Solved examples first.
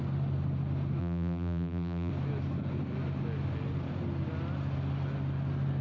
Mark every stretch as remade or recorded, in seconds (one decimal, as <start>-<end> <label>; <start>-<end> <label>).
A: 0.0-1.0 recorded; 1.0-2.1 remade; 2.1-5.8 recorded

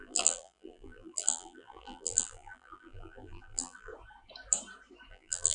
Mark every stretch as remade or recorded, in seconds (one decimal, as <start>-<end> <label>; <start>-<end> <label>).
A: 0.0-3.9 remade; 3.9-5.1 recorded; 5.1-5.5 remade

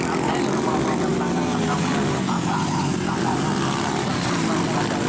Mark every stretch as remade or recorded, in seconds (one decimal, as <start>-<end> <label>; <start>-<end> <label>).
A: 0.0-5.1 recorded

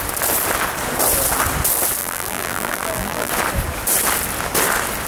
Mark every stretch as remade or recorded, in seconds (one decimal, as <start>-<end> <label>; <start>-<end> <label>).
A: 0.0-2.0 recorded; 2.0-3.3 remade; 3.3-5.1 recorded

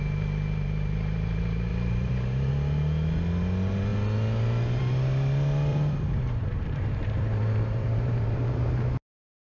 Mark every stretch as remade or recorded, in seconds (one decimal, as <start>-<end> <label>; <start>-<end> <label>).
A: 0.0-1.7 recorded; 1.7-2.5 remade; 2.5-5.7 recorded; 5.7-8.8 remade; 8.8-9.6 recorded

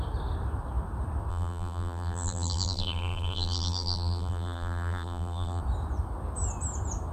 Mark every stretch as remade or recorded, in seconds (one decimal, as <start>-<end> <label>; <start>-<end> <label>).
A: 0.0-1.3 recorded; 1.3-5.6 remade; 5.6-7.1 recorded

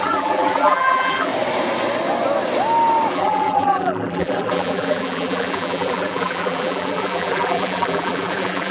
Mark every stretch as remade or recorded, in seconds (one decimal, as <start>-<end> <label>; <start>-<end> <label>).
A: 0.0-1.3 remade; 1.3-3.1 recorded; 3.1-8.7 remade